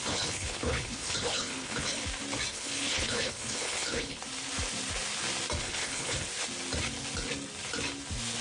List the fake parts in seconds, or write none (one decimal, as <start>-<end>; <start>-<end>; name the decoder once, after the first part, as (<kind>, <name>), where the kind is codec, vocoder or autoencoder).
0.0-2.0 (codec, HILCodec); 2.5-4.2; 5.6-6.3